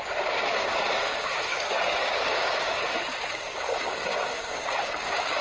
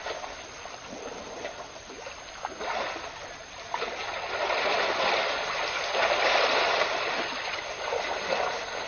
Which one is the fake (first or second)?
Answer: first